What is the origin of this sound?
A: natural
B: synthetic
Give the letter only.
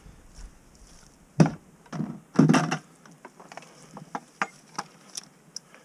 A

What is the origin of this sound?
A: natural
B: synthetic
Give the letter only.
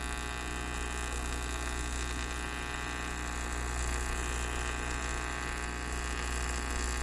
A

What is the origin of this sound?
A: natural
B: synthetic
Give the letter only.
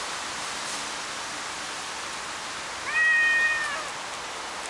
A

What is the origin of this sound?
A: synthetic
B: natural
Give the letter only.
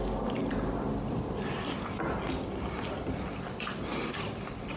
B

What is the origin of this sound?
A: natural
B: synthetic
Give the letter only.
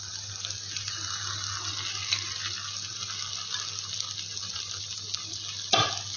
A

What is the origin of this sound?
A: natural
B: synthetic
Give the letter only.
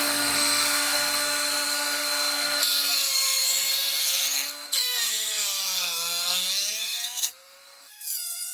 B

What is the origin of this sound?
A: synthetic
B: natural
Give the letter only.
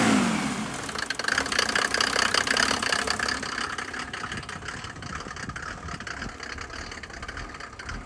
B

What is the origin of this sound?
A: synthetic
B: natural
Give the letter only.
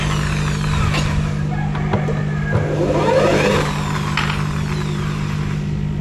B